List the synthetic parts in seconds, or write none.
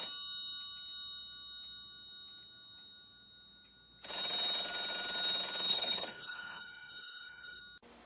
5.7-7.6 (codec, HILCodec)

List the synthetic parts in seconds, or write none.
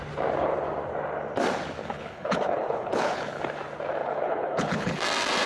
1.8-3.4 (codec, HILCodec); 4.0-5.0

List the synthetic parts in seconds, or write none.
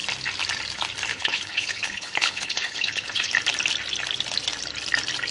1.1-3.3 (codec, HILCodec)